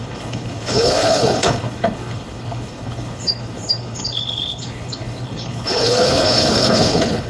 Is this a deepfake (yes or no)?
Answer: yes